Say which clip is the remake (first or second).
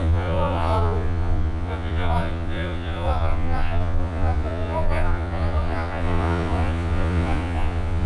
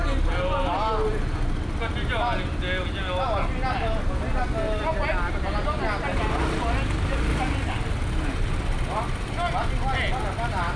first